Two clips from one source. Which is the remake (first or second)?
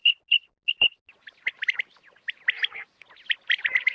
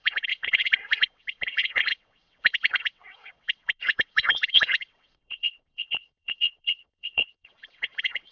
second